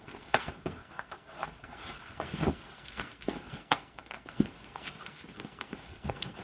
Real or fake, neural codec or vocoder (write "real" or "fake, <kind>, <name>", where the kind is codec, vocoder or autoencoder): fake, codec, SNAC